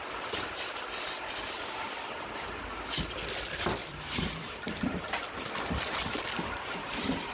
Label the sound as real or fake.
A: fake